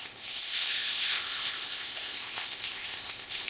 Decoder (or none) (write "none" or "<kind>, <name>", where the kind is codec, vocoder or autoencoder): codec, ZipCodec